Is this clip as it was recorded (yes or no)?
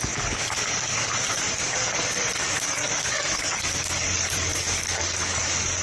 no